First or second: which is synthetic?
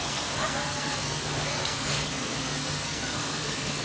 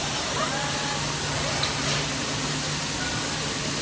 first